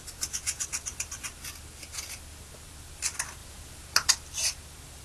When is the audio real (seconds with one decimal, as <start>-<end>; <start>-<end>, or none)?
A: 0.0-5.0